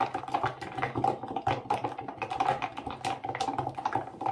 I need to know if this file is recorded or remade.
recorded